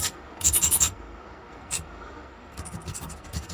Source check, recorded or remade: remade